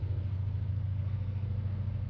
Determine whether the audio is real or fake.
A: fake